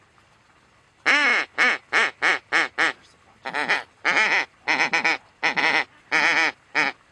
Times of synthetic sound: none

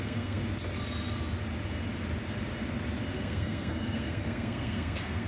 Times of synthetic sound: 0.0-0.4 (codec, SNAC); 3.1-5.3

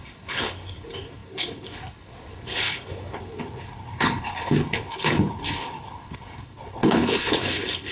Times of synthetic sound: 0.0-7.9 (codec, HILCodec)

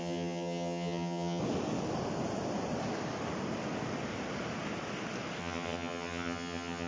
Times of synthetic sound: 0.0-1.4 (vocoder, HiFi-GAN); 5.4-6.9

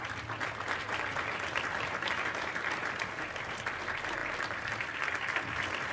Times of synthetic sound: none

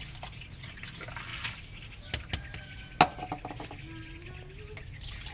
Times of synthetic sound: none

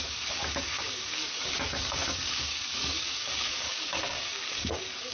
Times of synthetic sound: 0.0-5.1 (codec, DAC)

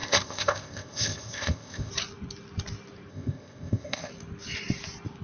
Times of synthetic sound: 0.0-1.9 (codec, ZipCodec); 3.1-4.1